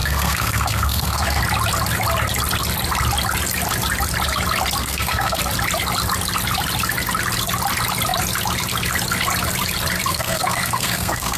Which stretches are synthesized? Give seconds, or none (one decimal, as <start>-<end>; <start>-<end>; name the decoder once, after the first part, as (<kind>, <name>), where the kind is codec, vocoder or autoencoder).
0.0-1.4 (codec, SNAC); 4.8-5.4; 10.1-11.4